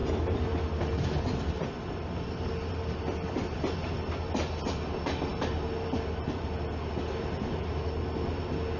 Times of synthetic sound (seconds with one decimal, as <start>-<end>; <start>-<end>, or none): none